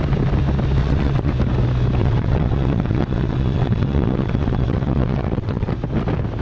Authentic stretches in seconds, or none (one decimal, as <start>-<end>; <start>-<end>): 0.0-0.8; 1.3-2.0; 5.7-6.4